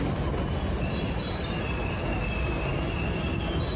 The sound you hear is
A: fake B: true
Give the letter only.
B